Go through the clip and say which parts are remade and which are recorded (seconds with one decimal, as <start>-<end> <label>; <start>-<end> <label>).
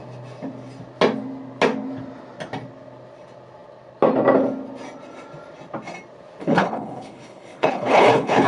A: 0.0-6.4 recorded; 6.4-8.5 remade